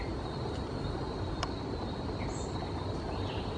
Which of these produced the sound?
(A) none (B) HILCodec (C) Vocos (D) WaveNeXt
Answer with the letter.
A